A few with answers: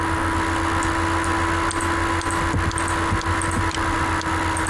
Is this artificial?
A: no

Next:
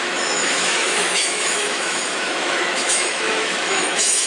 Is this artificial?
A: yes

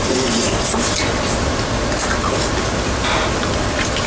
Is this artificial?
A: no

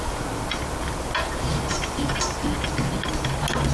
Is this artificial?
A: no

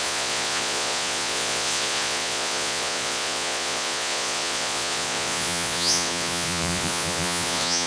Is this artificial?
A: yes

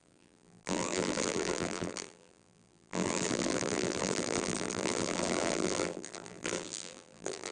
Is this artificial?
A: yes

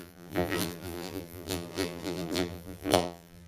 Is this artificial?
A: yes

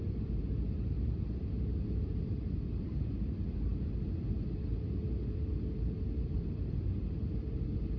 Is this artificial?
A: yes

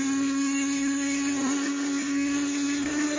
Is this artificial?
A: yes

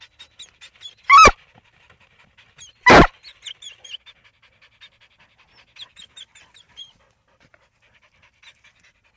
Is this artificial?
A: no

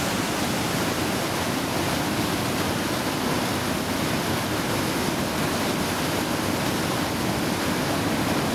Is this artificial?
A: no